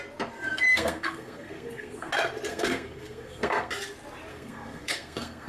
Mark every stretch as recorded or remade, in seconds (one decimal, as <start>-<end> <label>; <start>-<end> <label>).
0.0-0.7 recorded; 0.7-2.1 remade; 2.1-2.5 recorded; 2.5-3.7 remade; 3.7-4.3 recorded; 4.3-5.5 remade